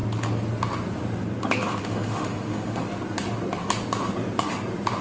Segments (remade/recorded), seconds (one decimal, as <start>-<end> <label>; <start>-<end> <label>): 0.0-1.8 recorded; 1.8-2.8 remade; 2.8-5.0 recorded